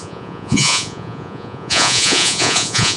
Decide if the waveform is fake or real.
fake